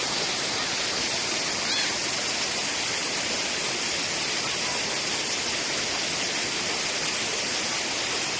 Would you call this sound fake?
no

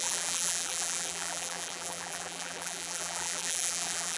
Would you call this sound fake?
yes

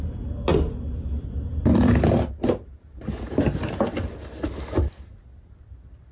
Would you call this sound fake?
no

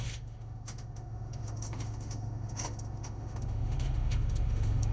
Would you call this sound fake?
yes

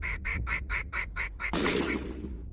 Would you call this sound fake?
yes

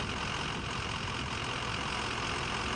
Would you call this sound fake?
no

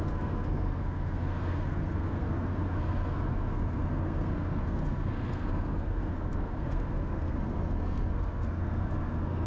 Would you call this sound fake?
yes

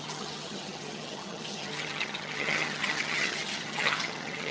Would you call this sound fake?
yes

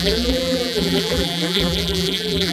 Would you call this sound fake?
yes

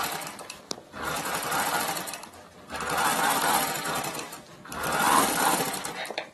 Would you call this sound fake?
no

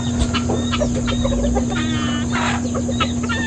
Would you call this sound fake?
no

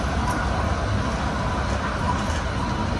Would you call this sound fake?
no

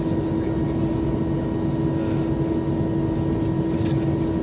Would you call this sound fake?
no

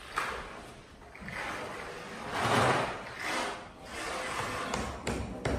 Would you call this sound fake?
no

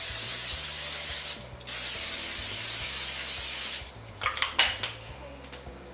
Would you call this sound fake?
no